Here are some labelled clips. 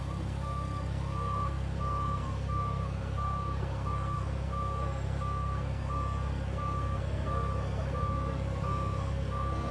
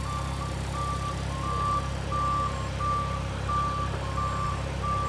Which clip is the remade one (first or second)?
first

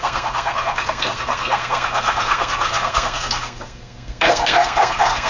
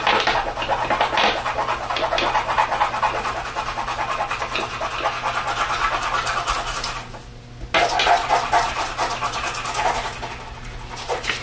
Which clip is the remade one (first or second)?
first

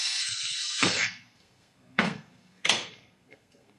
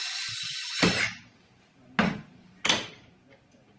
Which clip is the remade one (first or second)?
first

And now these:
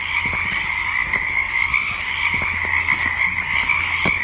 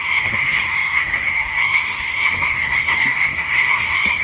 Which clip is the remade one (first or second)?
second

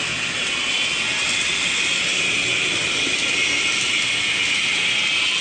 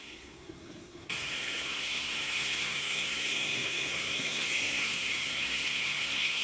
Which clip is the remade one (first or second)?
second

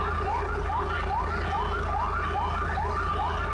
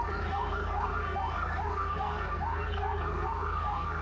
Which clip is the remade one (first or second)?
second